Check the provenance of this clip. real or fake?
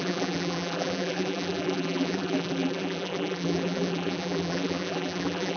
fake